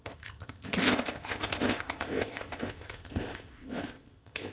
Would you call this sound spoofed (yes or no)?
yes